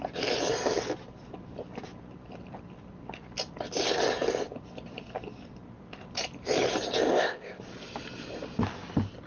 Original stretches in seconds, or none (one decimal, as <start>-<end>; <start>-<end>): 0.0-7.1; 7.6-9.3